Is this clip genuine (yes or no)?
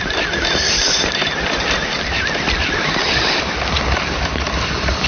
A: yes